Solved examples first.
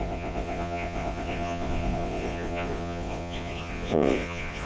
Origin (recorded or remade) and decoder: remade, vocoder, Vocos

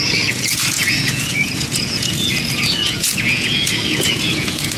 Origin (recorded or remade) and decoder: remade, vocoder, Vocos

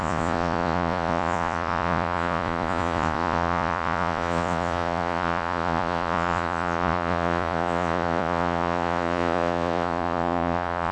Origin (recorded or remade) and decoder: remade, vocoder, Vocos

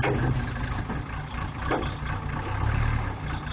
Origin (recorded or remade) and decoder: recorded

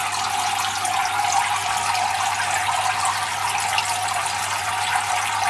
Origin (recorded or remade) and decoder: recorded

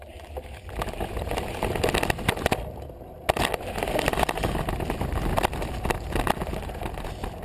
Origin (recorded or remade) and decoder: recorded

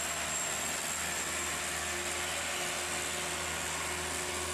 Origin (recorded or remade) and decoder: recorded